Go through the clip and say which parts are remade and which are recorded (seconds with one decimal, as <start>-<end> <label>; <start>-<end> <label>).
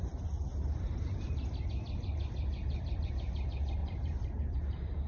0.0-0.5 recorded; 0.5-1.6 remade; 1.6-2.6 recorded; 2.6-3.1 remade; 3.1-3.8 recorded; 3.8-4.4 remade; 4.4-5.1 recorded